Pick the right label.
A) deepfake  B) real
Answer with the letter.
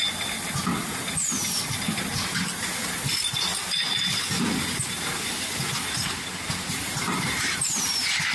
B